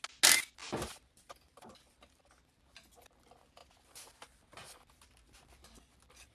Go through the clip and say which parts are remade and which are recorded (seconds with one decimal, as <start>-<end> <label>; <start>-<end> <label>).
0.0-0.6 recorded; 0.6-2.3 remade; 2.3-6.3 recorded